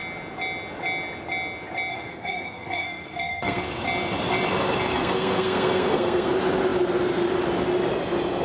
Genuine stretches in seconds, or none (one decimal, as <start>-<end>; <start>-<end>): 0.0-1.9; 3.6-5.0; 6.3-8.4